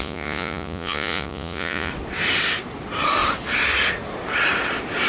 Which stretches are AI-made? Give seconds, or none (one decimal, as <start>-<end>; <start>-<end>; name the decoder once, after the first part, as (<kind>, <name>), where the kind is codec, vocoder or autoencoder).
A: 0.0-1.9 (vocoder, Vocos)